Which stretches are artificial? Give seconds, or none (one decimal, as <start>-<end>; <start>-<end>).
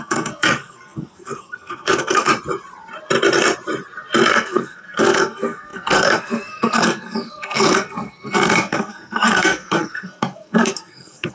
0.0-2.3; 4.3-11.3